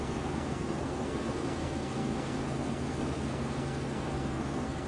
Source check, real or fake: fake